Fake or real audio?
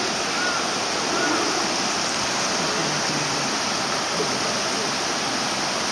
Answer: real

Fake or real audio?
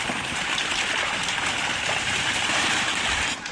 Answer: real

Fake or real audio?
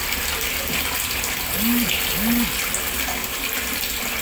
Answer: real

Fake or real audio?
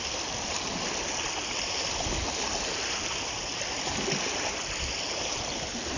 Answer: real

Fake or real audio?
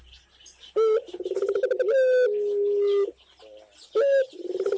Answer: real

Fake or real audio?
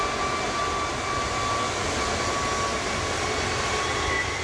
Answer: real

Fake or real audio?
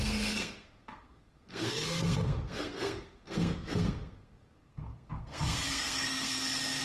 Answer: fake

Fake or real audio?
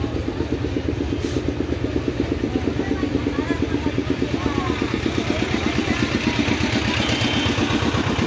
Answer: real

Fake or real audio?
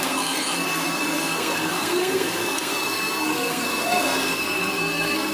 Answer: fake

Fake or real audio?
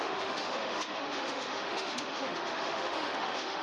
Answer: fake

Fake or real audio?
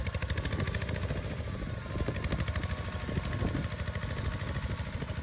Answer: real